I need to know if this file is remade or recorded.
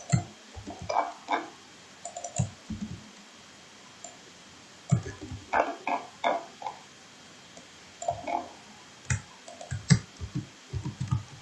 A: recorded